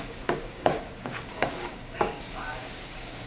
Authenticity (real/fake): fake